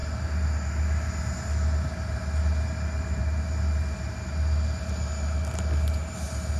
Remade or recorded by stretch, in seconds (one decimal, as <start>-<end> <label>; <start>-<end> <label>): 0.0-6.6 recorded